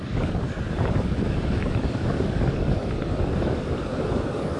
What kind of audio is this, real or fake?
fake